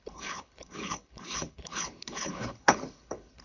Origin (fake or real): fake